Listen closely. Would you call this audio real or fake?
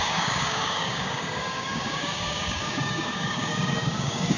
fake